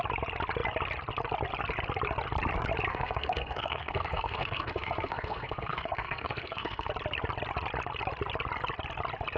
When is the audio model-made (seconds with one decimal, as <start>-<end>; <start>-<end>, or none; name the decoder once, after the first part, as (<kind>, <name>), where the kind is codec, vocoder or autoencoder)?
2.9-6.9 (codec, SNAC)